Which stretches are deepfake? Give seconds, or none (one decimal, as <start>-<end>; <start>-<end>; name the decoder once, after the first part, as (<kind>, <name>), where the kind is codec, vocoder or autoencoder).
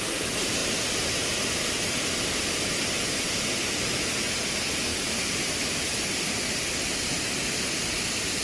none